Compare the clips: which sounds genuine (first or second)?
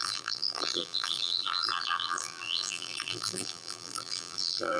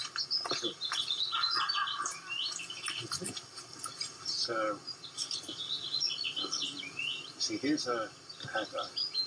second